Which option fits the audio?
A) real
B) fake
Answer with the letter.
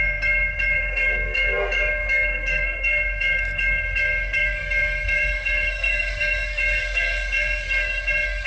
B